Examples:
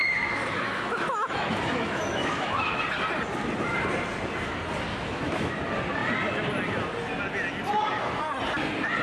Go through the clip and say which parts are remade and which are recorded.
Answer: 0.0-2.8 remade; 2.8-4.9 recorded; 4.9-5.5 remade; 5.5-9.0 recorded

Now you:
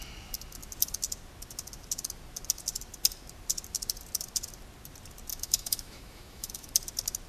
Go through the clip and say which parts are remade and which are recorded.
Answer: 0.0-5.3 recorded; 5.3-6.7 remade; 6.7-7.3 recorded

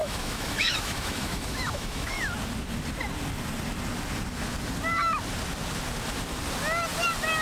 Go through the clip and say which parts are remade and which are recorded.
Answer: 0.0-2.3 remade; 2.3-7.4 recorded